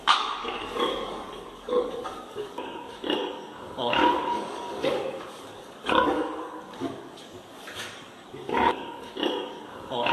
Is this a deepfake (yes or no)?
yes